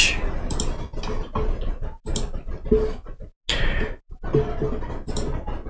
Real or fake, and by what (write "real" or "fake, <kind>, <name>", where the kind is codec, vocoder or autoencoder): real